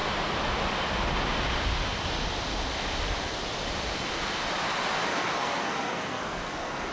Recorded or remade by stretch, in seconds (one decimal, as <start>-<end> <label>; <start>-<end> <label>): 0.0-5.1 recorded; 5.1-6.9 remade